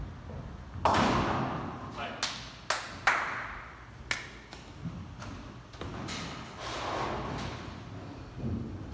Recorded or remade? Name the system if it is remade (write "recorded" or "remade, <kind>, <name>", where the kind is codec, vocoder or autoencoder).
recorded